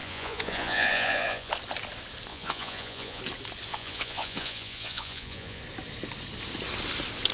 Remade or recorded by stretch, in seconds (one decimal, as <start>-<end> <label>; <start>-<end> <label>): 0.0-1.5 remade; 1.5-2.3 recorded; 2.3-3.2 remade; 3.2-3.7 recorded; 3.7-5.6 remade; 5.6-7.3 recorded